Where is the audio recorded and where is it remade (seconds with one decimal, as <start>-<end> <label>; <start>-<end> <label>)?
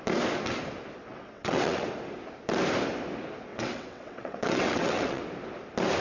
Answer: 0.0-1.1 recorded; 1.1-1.9 remade; 1.9-3.5 recorded; 3.5-5.2 remade; 5.2-6.0 recorded